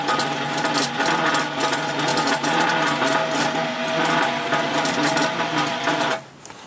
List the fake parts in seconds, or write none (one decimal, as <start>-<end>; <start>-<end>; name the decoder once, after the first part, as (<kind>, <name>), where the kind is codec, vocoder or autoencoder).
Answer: none